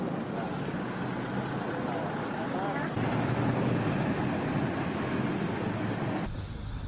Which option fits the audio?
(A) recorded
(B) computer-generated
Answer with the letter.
A